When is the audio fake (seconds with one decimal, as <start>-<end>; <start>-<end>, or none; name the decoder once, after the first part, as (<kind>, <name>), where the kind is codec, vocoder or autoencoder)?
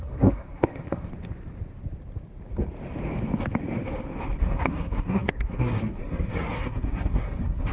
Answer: 0.0-1.1 (codec, SNAC); 4.4-7.7